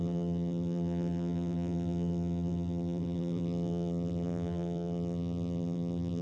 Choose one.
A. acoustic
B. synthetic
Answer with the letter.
B